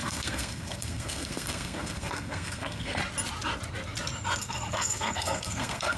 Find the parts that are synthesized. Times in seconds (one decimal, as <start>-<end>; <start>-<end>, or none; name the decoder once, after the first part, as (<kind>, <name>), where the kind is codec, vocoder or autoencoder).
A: 0.0-3.0 (codec, SNAC); 4.4-6.0